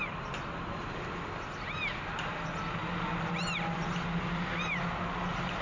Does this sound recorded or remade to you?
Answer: recorded